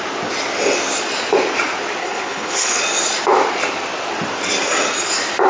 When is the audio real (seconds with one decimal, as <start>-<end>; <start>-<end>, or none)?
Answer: 0.0-2.0; 2.8-5.5